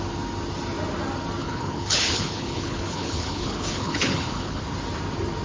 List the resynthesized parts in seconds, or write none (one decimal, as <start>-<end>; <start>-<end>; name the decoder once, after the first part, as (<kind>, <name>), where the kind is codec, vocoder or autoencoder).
1.4-4.6 (codec, HILCodec)